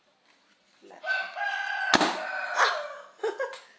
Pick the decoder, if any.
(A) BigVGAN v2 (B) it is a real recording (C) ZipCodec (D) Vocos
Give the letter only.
B